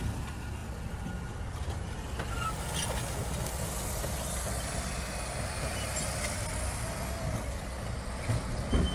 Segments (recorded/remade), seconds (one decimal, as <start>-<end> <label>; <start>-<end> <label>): 0.0-8.9 recorded